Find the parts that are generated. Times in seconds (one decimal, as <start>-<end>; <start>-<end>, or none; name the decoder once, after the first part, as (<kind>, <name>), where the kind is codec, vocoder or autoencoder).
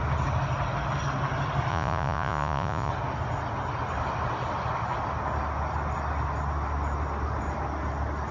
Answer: 1.7-2.9 (vocoder, Vocos)